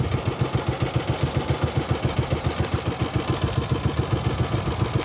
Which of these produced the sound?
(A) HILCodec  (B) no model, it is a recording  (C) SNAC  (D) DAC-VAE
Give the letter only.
B